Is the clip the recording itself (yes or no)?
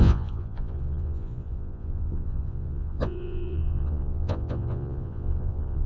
no